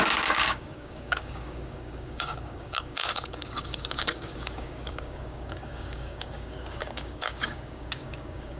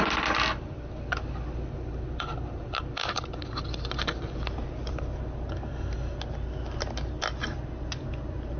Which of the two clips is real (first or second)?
second